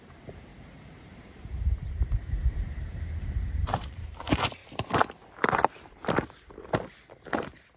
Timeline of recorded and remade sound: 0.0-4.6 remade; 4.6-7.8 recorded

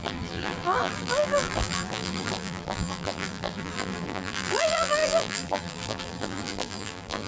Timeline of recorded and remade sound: 0.0-7.3 remade

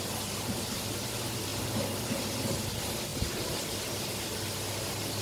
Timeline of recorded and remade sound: 0.0-3.1 recorded; 3.1-3.7 remade; 3.7-5.2 recorded